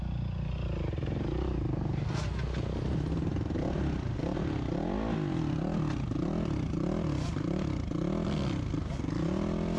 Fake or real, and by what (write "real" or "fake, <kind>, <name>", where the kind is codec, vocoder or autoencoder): real